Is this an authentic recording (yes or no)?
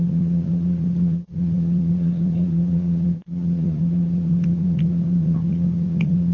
no